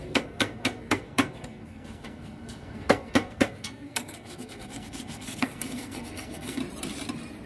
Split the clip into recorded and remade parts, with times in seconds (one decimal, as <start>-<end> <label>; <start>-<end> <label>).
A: 0.0-6.6 remade; 6.6-7.5 recorded